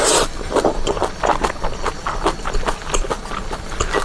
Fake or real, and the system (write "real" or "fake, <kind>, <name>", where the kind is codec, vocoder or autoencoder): real